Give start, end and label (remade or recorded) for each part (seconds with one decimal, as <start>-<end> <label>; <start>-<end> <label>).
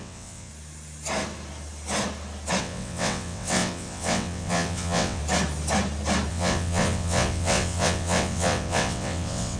0.0-0.5 remade; 0.5-2.6 recorded; 2.6-5.2 remade; 5.2-6.3 recorded; 6.3-9.6 remade